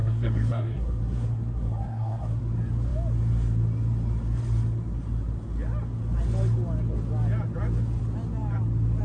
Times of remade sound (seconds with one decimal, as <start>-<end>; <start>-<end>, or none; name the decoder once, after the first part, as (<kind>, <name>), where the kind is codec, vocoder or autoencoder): 0.0-2.4 (codec, SNAC)